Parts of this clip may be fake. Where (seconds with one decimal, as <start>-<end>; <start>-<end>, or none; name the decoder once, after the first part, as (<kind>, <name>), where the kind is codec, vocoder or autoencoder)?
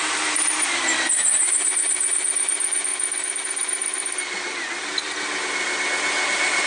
0.0-2.9 (vocoder, BigVGAN v2); 3.4-3.8; 6.3-6.7